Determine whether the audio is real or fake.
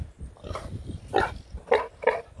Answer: real